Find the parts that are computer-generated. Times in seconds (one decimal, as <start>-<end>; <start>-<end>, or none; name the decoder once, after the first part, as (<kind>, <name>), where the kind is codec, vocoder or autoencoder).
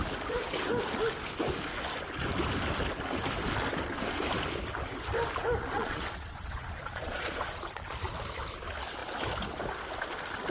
5.6-7.6 (vocoder, Vocos)